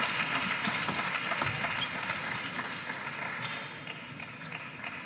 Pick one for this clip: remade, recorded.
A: recorded